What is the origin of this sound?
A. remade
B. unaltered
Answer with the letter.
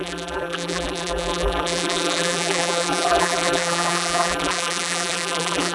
A